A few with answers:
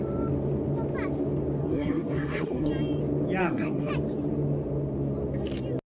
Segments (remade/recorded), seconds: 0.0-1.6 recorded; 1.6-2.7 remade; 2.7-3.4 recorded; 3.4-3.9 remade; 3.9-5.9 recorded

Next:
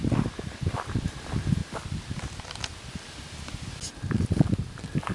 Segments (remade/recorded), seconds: 0.0-5.1 recorded

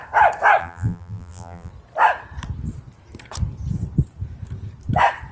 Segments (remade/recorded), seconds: 0.0-0.6 recorded; 0.6-1.7 remade; 1.7-5.3 recorded